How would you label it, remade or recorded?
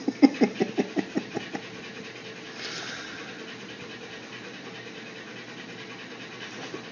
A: recorded